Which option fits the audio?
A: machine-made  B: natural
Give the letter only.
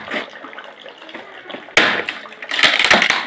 B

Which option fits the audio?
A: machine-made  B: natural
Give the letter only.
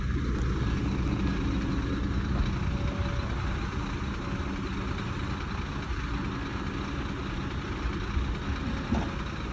B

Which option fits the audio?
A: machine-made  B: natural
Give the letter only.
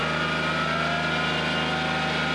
B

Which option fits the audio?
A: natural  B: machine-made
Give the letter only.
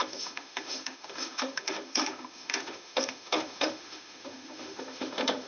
B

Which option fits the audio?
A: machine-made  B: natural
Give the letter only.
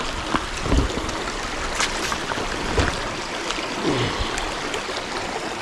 B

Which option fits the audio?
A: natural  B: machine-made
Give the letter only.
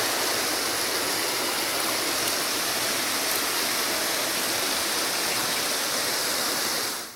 A